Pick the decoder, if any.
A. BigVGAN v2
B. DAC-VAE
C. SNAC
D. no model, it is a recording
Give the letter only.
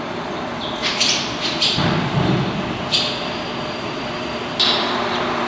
A